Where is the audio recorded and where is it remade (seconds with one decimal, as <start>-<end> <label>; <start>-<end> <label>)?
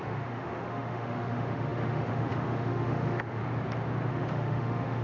0.0-3.4 remade; 3.4-4.1 recorded; 4.1-5.0 remade